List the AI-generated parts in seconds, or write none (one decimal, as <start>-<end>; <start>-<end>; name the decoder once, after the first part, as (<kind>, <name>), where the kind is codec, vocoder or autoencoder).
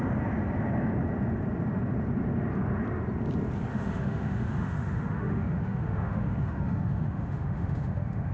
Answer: 3.7-8.3 (autoencoder, DAC-VAE)